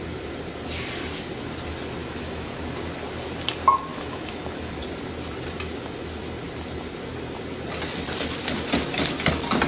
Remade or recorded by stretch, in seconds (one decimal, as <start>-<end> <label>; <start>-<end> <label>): 0.0-2.0 recorded; 2.0-2.6 remade; 2.6-3.9 recorded; 3.9-4.7 remade; 4.7-9.7 recorded